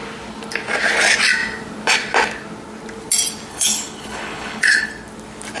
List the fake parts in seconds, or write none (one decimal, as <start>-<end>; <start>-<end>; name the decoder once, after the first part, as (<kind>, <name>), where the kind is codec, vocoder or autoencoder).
3.5-4.9 (codec, HILCodec)